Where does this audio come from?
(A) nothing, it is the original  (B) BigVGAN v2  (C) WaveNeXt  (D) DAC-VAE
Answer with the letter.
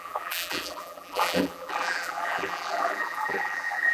B